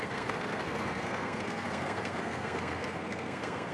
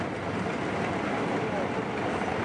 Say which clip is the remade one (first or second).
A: first